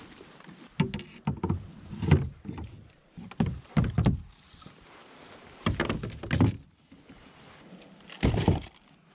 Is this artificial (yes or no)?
no